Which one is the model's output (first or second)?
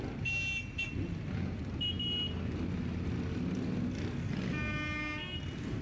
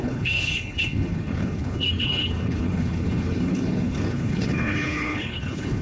second